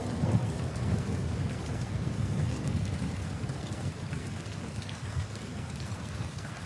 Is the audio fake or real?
fake